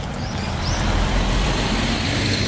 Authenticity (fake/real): fake